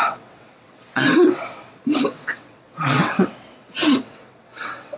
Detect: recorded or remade remade